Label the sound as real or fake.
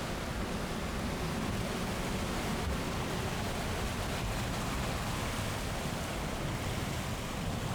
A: real